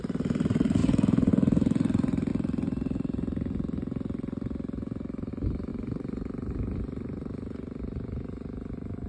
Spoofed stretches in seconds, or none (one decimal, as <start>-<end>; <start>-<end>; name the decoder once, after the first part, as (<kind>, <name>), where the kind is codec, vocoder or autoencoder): none